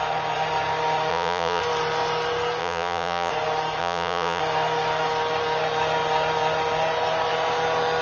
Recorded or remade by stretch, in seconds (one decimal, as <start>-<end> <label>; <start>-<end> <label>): 0.0-1.1 recorded; 1.1-1.6 remade; 1.6-2.6 recorded; 2.6-3.3 remade; 3.3-3.8 recorded; 3.8-4.4 remade; 4.4-8.0 recorded